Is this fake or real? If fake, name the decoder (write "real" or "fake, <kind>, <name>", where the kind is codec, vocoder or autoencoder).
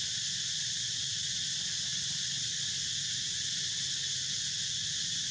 real